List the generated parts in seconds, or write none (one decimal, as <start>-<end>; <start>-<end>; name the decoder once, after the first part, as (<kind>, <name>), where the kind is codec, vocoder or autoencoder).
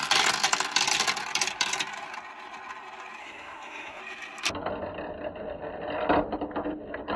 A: 3.2-4.0 (codec, SNAC)